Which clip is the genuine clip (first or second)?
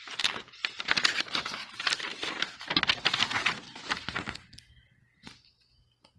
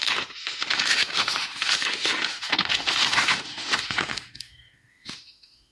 first